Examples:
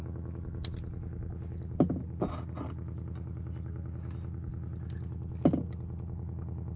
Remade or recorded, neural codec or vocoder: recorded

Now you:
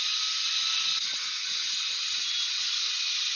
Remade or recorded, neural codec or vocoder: recorded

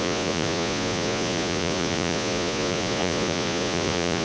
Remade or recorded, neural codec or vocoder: remade, vocoder, Vocos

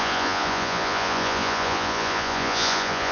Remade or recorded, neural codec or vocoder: remade, vocoder, Vocos